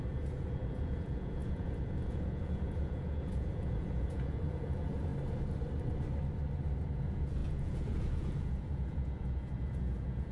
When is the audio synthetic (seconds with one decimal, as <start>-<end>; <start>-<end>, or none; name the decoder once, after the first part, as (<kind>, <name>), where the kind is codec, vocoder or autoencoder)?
0.0-5.1 (vocoder, Vocos); 6.9-10.3